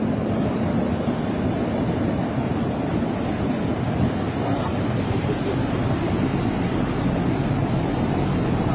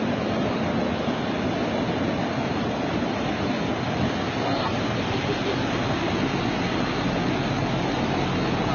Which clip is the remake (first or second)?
first